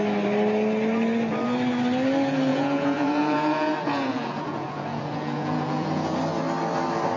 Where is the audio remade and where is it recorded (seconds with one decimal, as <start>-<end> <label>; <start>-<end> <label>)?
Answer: 0.0-2.5 recorded; 2.5-6.2 remade; 6.2-7.2 recorded